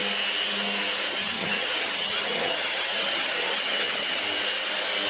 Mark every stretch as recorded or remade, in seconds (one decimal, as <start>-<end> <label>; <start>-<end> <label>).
0.0-1.1 recorded; 1.1-4.2 remade; 4.2-5.1 recorded